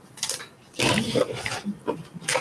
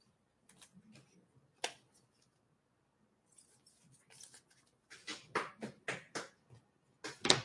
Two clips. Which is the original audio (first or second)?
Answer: second